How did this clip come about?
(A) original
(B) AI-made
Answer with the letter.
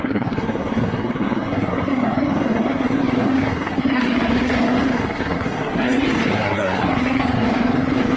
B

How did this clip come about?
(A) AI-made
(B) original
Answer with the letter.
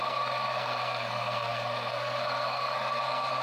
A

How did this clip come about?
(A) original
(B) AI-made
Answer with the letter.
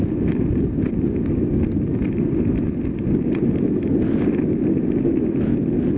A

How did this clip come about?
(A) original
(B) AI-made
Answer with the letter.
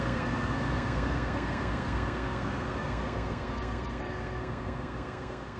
B